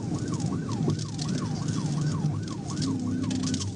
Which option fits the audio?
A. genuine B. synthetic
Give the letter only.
A